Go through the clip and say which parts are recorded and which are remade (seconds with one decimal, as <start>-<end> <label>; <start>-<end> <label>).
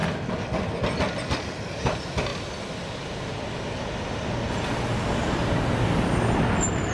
0.0-6.9 recorded